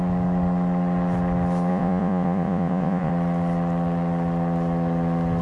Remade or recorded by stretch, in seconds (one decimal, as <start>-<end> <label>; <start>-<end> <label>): 0.0-1.7 recorded; 1.7-3.1 remade; 3.1-5.4 recorded